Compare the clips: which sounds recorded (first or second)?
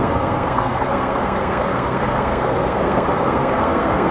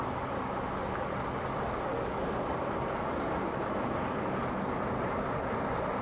second